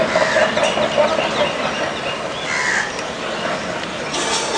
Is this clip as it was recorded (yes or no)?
yes